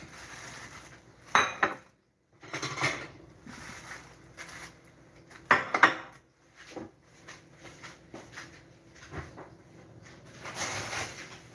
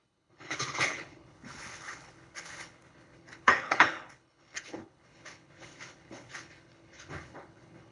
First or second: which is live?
first